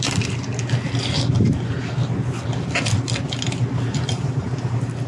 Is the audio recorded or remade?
recorded